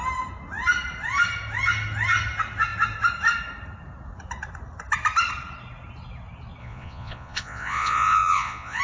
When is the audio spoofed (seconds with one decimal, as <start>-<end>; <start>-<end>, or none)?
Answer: 6.6-8.8